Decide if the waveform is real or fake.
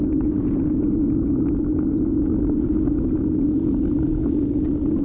real